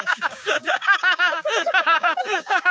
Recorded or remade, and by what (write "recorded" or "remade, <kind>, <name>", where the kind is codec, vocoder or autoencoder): remade, codec, DAC